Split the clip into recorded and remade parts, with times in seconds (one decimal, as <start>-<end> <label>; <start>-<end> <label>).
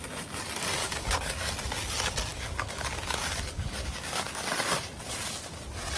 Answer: 0.0-0.8 recorded; 0.8-1.5 remade; 1.5-2.3 recorded; 2.3-4.6 remade; 4.6-6.0 recorded